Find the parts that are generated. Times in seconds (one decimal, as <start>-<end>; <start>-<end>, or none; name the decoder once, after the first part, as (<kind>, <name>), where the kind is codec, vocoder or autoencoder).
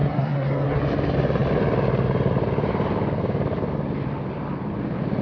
0.0-0.8 (codec, SNAC)